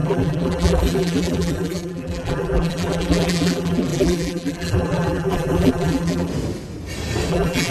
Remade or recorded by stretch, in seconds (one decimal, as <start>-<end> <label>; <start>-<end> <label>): 0.0-6.3 remade; 6.3-7.3 recorded; 7.3-7.7 remade

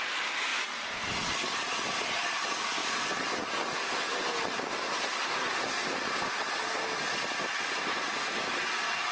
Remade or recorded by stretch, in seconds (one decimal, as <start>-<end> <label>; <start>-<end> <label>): 0.0-0.5 recorded; 0.5-2.0 remade; 2.0-5.8 recorded; 5.8-6.9 remade; 6.9-9.1 recorded